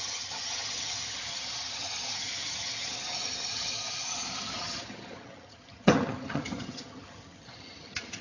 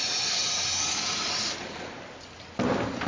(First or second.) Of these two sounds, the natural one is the second